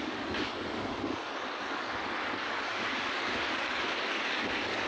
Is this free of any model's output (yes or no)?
no